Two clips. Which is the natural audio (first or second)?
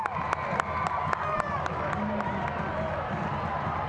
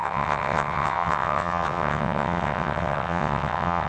first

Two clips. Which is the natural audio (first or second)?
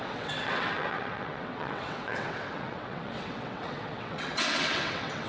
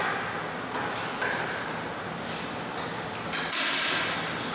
second